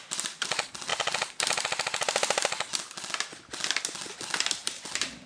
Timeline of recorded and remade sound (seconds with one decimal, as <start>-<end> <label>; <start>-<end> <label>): 0.0-5.3 recorded